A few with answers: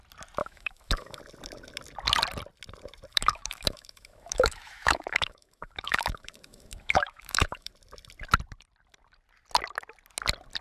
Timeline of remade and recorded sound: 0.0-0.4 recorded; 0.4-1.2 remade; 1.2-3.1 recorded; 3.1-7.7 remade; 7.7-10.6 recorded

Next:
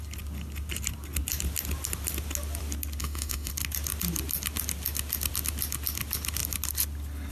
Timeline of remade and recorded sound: 0.0-3.0 recorded; 3.0-3.5 remade; 3.5-7.3 recorded

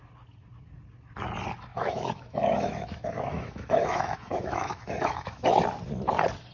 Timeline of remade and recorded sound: 0.0-1.7 recorded; 1.7-5.6 remade; 5.6-6.5 recorded